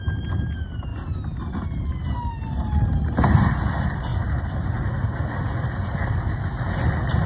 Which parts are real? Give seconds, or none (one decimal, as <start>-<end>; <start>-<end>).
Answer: 0.0-7.3